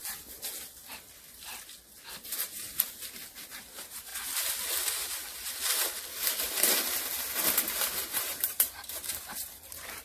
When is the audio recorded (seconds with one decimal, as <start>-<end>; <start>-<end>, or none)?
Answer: 0.0-3.4; 4.1-8.1